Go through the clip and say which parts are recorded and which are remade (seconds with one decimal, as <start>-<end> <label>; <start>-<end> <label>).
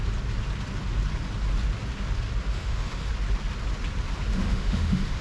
0.0-2.5 recorded; 2.5-3.1 remade; 3.1-4.3 recorded; 4.3-5.2 remade